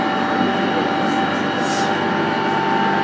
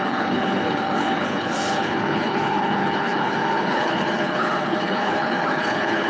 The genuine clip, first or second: first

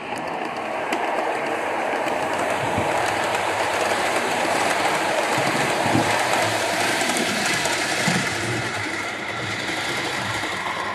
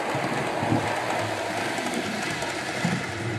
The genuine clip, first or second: second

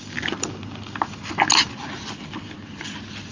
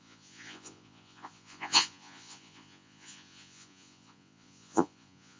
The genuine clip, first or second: first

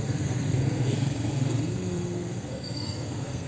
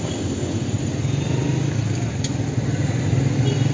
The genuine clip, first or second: second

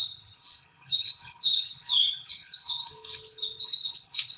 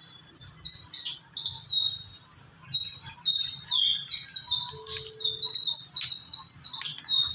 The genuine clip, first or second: second